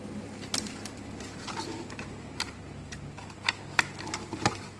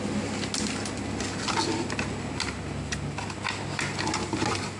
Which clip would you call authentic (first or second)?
second